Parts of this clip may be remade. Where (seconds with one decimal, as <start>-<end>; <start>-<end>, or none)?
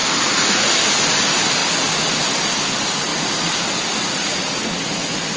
0.0-0.7; 4.1-4.9